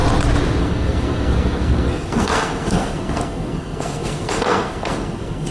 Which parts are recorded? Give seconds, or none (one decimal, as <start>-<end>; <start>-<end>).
0.0-0.6